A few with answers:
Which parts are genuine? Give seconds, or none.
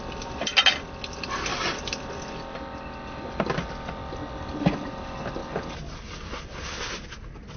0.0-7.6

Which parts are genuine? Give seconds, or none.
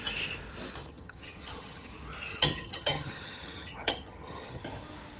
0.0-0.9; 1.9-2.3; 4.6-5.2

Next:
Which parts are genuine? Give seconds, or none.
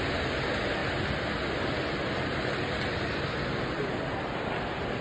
0.0-5.0